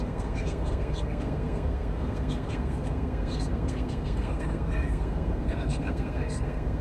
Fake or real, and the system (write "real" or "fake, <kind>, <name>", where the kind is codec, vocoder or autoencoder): fake, codec, SNAC